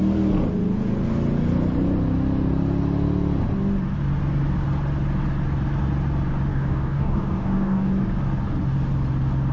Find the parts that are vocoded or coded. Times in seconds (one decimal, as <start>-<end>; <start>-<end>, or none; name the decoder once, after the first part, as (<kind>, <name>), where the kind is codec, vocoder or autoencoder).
6.5-7.9 (codec, DAC)